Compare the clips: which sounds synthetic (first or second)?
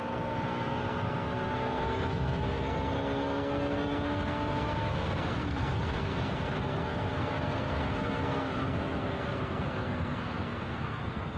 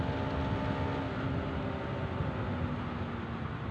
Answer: first